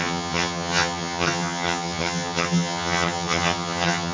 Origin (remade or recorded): remade